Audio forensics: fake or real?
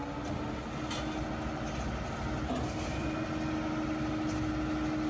real